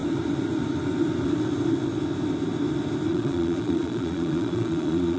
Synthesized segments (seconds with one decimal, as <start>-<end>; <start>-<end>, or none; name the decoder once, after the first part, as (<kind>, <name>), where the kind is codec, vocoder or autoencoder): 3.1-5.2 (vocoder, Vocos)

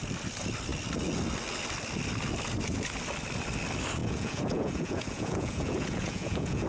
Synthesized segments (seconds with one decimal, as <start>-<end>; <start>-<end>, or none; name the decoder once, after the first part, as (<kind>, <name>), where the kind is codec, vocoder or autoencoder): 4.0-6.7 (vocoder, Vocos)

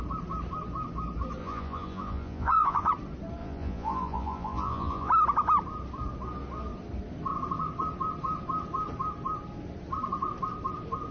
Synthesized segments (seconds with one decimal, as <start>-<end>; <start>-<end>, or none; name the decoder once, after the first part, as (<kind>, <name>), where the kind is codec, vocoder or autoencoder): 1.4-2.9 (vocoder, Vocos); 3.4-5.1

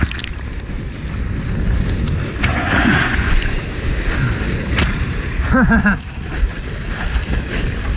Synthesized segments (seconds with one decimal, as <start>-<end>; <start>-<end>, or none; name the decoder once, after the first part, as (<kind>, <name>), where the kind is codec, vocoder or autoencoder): 2.5-3.6 (vocoder, Vocos)

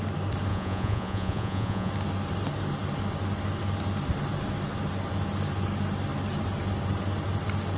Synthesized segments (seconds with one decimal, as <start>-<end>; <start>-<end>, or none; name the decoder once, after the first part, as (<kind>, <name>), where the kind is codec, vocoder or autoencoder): 0.5-1.9 (vocoder, Vocos)

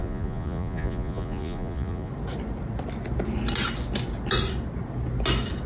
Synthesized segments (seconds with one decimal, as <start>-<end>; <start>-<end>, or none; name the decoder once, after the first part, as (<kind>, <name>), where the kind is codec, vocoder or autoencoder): 0.0-2.1 (vocoder, Vocos)

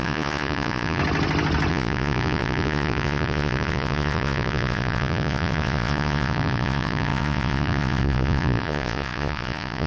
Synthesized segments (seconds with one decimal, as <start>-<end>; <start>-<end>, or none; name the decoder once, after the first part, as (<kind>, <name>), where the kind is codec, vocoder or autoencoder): 0.0-1.0 (vocoder, Vocos); 1.7-9.9